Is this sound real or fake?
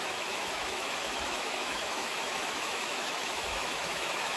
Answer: fake